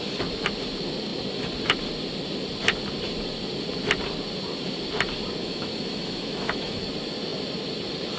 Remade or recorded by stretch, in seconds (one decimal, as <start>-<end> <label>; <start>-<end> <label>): 0.0-5.4 recorded; 5.4-6.8 remade; 6.8-8.2 recorded